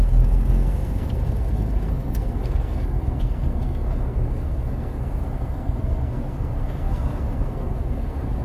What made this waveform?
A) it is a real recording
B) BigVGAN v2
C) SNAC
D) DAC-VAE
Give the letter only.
C